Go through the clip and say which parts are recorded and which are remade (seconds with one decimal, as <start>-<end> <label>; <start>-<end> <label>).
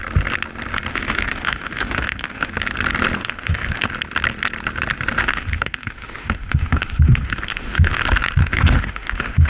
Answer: 0.0-0.9 recorded; 0.9-2.5 remade; 2.5-3.2 recorded; 3.2-3.9 remade; 3.9-5.2 recorded; 5.2-8.0 remade; 8.0-8.4 recorded; 8.4-9.5 remade